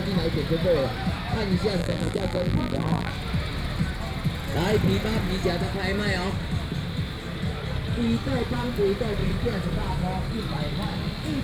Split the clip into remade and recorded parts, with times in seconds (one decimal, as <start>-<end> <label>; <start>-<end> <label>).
0.0-1.8 recorded; 1.8-3.1 remade; 3.1-11.4 recorded